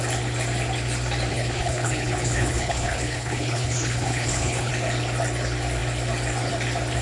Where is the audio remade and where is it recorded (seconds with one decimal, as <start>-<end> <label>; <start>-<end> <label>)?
0.0-1.3 recorded; 1.3-4.7 remade; 4.7-7.0 recorded

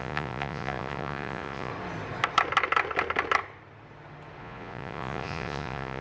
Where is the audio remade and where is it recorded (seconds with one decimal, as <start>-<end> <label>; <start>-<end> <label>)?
0.0-1.7 remade; 1.7-4.4 recorded; 4.4-6.0 remade